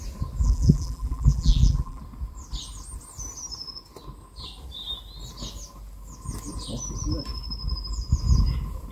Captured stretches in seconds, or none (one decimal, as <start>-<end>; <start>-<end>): 0.0-0.4; 2.0-8.9

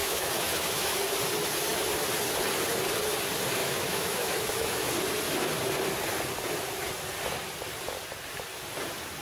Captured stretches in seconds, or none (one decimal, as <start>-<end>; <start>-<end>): 1.0-3.6; 4.9-9.2

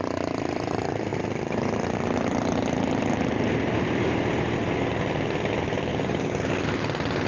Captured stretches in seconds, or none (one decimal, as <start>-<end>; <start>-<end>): 0.0-5.9; 6.5-7.3